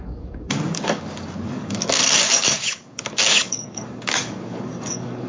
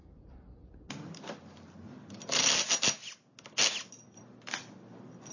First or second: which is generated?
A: first